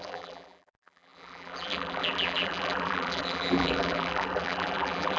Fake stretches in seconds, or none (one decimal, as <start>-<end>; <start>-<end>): 0.0-5.2